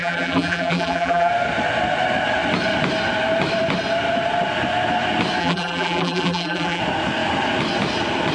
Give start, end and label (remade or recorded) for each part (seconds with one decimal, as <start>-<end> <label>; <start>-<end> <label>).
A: 0.0-1.3 remade; 1.3-5.4 recorded; 5.4-6.8 remade; 6.8-8.3 recorded